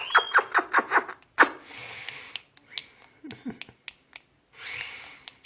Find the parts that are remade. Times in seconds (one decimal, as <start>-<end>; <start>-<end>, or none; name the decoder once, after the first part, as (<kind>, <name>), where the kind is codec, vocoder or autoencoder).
none